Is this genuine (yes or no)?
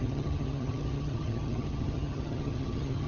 no